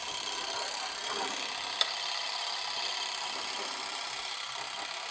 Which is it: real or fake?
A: real